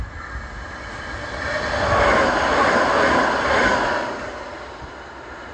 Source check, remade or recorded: recorded